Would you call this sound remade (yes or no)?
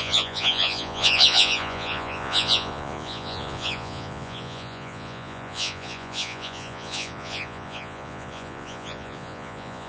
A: yes